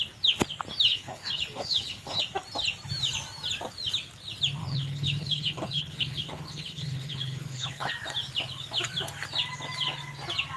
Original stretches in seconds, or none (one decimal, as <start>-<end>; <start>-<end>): 0.0-0.9; 2.2-4.6; 7.9-10.6